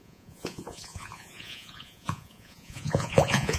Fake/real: fake